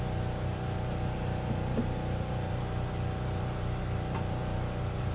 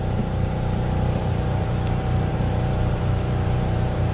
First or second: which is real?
first